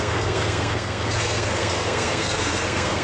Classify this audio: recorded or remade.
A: remade